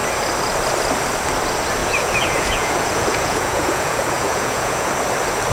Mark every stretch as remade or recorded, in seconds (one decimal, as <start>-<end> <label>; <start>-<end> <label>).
0.0-1.8 recorded; 1.8-4.9 remade; 4.9-5.5 recorded